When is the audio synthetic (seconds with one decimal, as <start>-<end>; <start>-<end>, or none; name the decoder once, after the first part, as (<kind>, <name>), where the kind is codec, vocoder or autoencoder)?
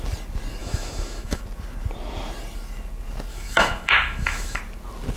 0.6-1.4 (autoencoder, DAC-VAE); 3.3-4.6